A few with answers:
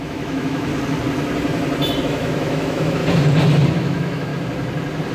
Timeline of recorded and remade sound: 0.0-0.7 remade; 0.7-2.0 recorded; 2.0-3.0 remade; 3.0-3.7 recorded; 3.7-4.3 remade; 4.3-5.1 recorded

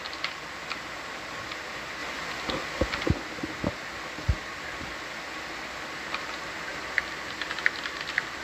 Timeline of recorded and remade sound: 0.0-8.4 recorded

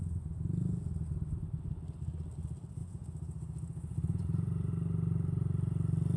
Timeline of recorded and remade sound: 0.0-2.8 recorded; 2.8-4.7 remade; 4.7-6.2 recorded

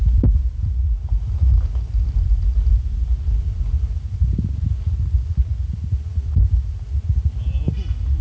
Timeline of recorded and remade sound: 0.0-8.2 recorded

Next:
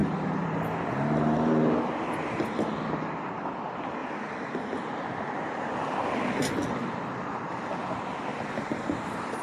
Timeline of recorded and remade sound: 0.0-0.6 remade; 0.6-8.3 recorded; 8.3-9.4 remade

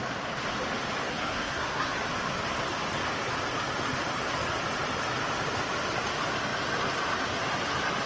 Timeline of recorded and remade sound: 0.0-1.0 recorded; 1.0-1.9 remade; 1.9-8.1 recorded

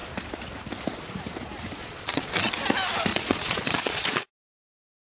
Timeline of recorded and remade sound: 0.0-1.8 recorded; 1.8-2.5 remade; 2.5-3.1 recorded; 3.1-4.3 remade; 4.3-5.2 recorded